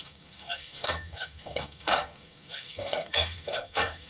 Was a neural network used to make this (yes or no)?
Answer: yes